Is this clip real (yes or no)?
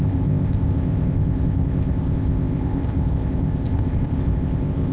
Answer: no